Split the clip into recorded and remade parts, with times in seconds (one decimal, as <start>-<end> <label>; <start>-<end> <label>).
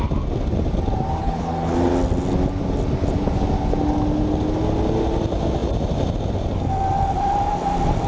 0.0-1.2 recorded; 1.2-1.9 remade; 1.9-8.1 recorded